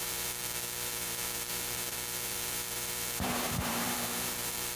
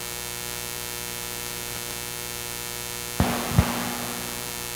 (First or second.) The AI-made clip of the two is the first